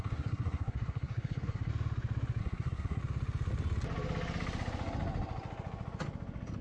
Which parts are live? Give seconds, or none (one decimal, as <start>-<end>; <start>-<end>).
1.7-2.4; 3.0-6.6